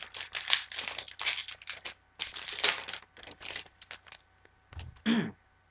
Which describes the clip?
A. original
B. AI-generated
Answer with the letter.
A